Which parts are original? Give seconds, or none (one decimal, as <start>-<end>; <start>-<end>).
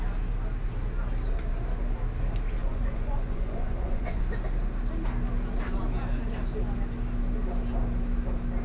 0.0-2.6; 4.2-8.6